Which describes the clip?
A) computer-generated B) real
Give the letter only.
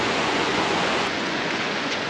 A